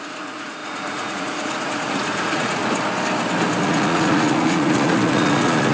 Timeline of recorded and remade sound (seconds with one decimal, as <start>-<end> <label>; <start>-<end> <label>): 0.0-2.6 remade; 2.6-3.6 recorded; 3.6-5.7 remade